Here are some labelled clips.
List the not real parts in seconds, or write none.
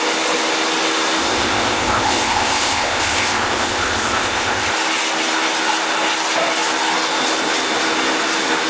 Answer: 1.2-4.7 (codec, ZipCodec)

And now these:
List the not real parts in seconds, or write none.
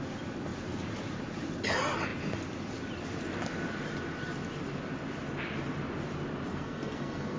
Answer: 6.5-7.4 (codec, SNAC)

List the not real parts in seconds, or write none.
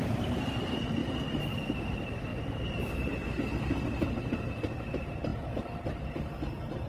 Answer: 0.0-1.0 (vocoder, BigVGAN v2); 1.8-2.3; 2.9-6.9